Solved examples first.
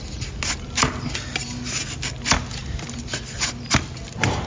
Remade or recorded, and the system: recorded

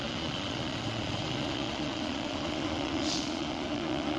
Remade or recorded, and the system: remade, vocoder, Vocos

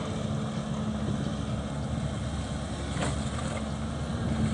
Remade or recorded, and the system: recorded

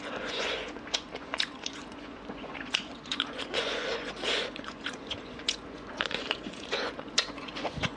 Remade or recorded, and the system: remade, vocoder, Vocos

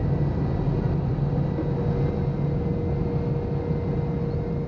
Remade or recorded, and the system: recorded